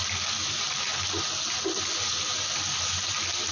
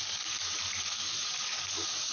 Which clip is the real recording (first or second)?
first